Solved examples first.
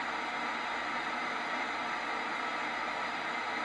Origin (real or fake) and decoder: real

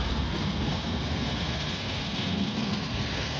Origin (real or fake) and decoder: fake, codec, SNAC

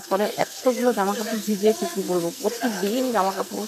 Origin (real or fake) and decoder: fake, codec, SNAC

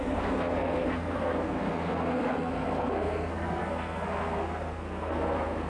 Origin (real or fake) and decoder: fake, codec, SNAC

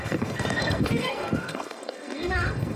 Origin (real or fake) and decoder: fake, codec, SNAC